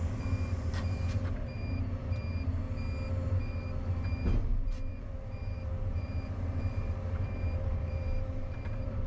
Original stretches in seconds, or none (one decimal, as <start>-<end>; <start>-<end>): 2.6-3.1